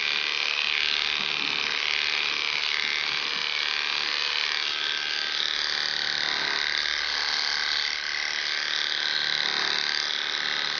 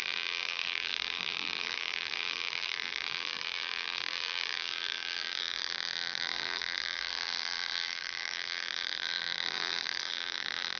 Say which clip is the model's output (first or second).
second